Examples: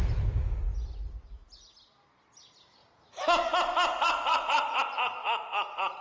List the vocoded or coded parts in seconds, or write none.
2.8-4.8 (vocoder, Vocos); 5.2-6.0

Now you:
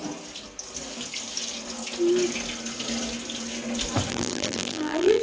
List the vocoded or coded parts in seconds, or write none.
4.1-5.2 (vocoder, BigVGAN v2)

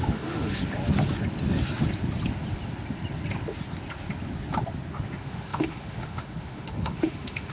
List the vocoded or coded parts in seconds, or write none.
0.0-0.6 (autoencoder, DAC-VAE); 4.9-7.5

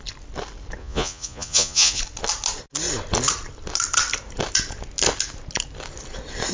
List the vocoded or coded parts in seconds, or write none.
0.8-2.0 (vocoder, Vocos)

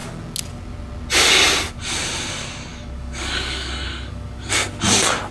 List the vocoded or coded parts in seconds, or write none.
2.7-4.5 (codec, DAC)

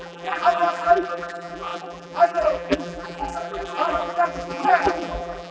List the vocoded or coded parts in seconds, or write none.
0.0-5.5 (vocoder, BigVGAN v2)